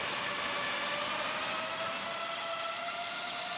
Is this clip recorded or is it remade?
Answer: recorded